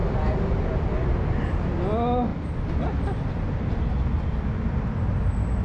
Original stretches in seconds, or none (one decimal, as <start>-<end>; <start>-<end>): 0.0-5.6